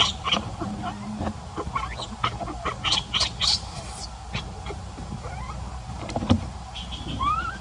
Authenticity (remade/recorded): recorded